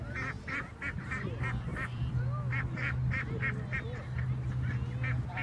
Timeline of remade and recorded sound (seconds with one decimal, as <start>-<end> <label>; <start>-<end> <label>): 0.0-1.7 recorded; 1.7-2.2 remade; 2.2-5.4 recorded